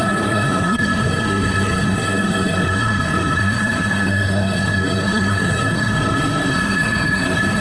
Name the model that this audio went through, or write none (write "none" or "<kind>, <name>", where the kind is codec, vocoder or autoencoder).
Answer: codec, SNAC